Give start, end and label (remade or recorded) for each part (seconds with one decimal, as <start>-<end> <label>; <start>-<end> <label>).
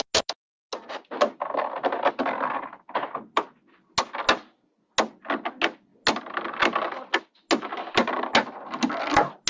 0.0-9.5 recorded